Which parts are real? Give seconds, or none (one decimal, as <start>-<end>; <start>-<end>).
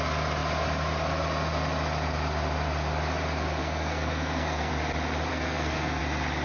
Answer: 0.0-3.6; 4.7-5.3; 6.0-6.4